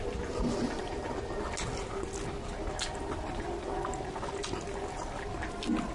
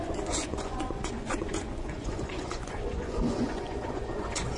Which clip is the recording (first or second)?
first